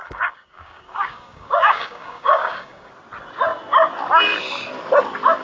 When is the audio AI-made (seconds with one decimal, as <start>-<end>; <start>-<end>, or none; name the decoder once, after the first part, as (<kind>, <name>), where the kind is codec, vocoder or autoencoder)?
0.0-2.9 (codec, DAC)